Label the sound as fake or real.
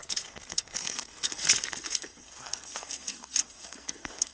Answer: fake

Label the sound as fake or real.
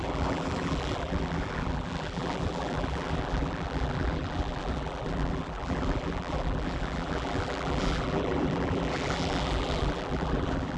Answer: fake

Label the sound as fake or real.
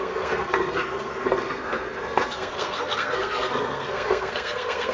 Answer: fake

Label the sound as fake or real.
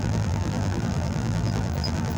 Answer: fake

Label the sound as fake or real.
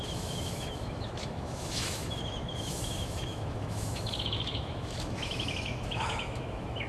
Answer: fake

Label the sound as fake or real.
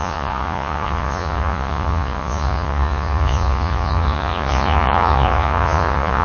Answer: fake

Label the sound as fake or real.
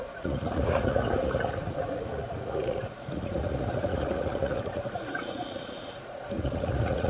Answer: fake